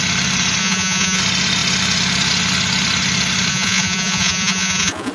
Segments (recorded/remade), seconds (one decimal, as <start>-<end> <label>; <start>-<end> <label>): 0.0-0.6 recorded; 0.6-1.2 remade; 1.2-3.5 recorded; 3.5-5.1 remade